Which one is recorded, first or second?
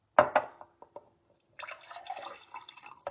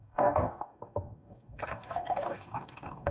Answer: first